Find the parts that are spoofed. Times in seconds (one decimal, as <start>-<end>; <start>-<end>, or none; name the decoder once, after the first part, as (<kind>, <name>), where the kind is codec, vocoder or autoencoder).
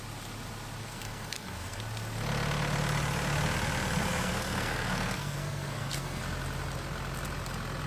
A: 0.8-1.8 (codec, SNAC); 4.0-6.2